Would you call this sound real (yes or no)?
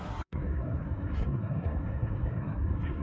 no